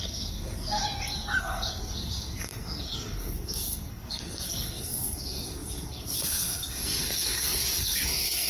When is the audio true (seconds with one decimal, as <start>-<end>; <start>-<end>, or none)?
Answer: 0.8-1.4